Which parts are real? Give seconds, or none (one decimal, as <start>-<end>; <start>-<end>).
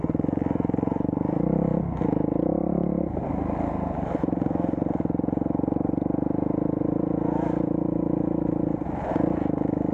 1.7-6.8